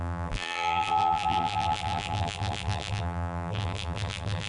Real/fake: fake